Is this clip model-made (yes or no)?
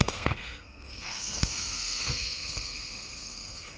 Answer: yes